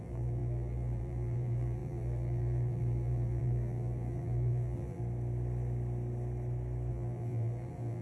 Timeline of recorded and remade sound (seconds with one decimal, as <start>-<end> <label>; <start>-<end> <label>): 0.0-5.0 remade; 5.0-6.9 recorded; 6.9-8.0 remade